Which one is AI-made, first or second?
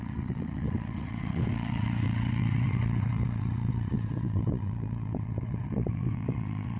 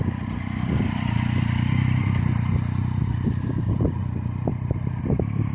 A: first